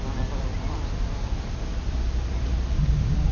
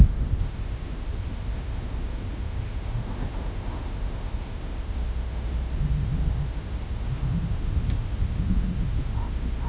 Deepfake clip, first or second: second